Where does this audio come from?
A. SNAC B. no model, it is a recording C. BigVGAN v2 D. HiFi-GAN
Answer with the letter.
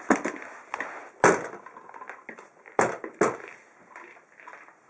B